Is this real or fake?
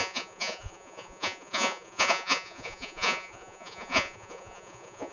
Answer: fake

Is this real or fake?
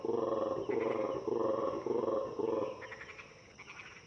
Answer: real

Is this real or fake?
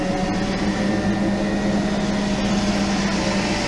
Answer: real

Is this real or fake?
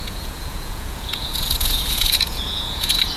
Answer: fake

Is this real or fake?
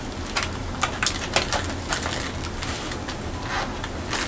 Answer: real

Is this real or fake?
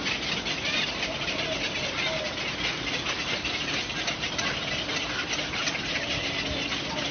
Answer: real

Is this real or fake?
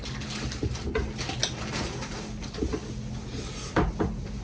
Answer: real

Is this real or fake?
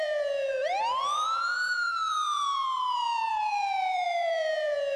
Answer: fake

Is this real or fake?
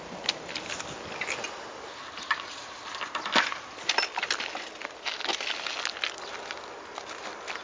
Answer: real